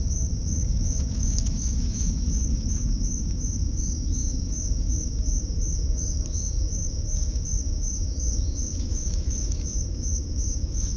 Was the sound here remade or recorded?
remade